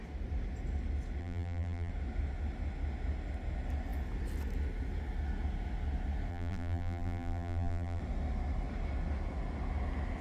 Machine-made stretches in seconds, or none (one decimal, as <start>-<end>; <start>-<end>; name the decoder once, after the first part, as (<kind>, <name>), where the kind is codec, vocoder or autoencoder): 1.2-1.9 (vocoder, BigVGAN v2); 6.3-8.0